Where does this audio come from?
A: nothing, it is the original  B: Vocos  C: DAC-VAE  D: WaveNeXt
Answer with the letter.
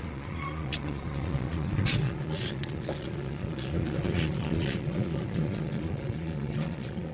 B